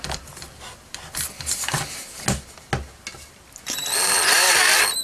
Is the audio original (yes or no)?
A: yes